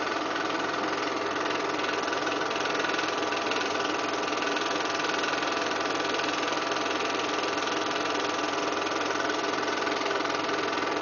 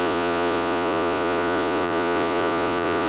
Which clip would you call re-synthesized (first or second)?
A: second